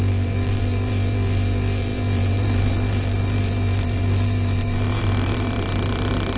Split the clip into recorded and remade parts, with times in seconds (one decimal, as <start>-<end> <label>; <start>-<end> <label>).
0.0-6.4 remade